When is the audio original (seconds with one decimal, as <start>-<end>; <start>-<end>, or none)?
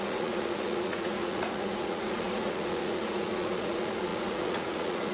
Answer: none